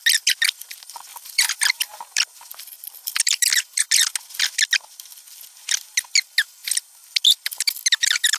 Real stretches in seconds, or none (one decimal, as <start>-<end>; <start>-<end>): 0.0-1.1; 3.5-8.4